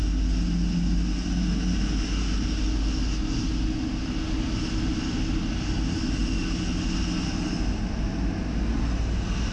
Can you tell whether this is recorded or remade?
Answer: recorded